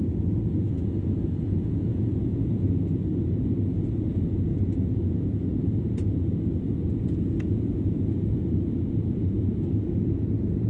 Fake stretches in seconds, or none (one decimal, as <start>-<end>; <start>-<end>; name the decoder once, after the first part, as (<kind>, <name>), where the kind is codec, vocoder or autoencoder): 0.0-3.1 (vocoder, Vocos); 4.2-6.0; 7.0-8.4; 9.8-10.7